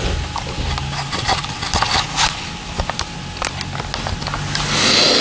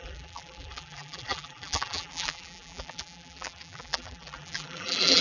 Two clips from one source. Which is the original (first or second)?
first